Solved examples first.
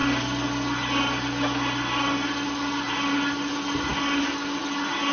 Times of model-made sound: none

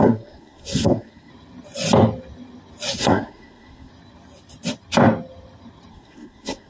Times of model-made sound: 0.0-1.3; 3.0-3.9; 5.9-6.7

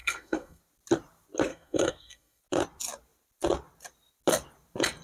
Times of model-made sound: 0.0-0.6; 1.5-2.4